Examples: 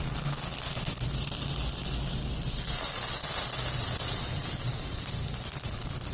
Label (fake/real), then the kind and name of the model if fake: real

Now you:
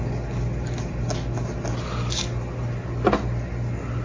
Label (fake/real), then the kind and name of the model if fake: real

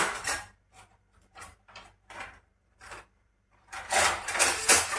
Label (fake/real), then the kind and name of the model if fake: fake, vocoder, BigVGAN v2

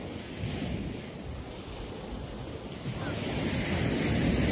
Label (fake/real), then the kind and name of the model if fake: real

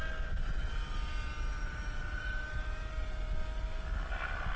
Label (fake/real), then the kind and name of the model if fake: real